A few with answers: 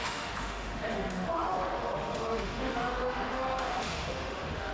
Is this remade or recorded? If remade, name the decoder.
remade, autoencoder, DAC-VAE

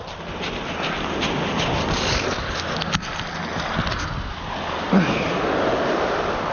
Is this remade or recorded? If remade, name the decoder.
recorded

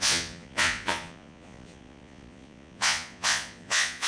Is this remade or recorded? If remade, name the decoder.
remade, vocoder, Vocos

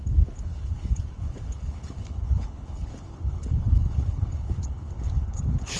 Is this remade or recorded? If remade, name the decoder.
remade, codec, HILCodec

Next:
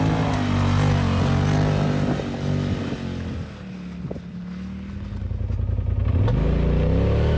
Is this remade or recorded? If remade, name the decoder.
recorded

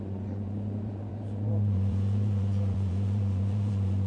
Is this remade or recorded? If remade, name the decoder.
remade, vocoder, Vocos